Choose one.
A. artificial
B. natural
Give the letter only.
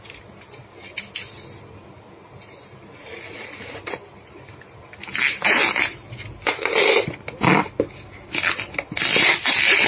B